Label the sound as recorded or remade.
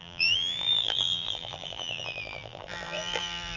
remade